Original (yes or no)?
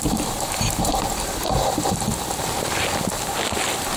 yes